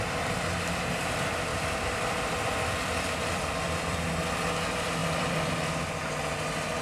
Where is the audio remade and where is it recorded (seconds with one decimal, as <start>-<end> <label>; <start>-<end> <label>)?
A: 0.0-1.5 recorded; 1.5-4.1 remade; 4.1-5.0 recorded; 5.0-5.5 remade; 5.5-6.8 recorded